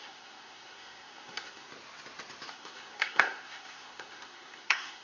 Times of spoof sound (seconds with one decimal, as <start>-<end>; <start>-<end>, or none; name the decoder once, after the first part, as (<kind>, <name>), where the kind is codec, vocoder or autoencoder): 0.0-1.7 (codec, SNAC); 2.5-5.0